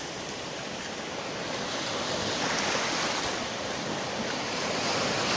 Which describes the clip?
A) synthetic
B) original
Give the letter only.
B